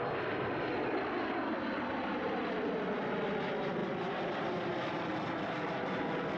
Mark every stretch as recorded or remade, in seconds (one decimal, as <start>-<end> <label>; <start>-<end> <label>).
0.0-6.4 recorded